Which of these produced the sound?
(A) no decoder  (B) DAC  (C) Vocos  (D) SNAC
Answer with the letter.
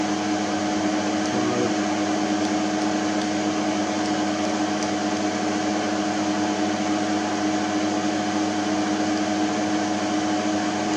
A